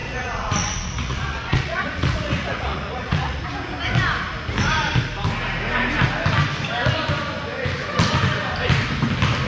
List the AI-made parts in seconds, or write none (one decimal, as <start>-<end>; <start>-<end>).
0.0-3.4